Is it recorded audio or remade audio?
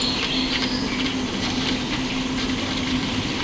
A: recorded